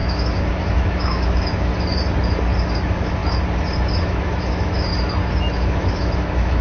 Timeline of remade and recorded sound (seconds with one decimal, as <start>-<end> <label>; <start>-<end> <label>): 0.0-1.7 remade; 1.7-2.8 recorded; 2.8-3.2 remade; 3.2-4.0 recorded; 4.0-4.9 remade; 4.9-5.4 recorded; 5.4-6.6 remade